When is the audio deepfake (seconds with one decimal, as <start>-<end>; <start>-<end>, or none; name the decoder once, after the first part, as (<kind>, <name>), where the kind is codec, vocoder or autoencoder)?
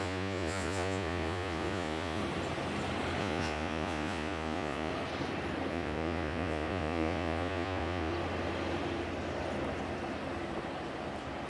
0.0-2.2 (vocoder, Vocos); 3.2-4.9; 5.7-8.1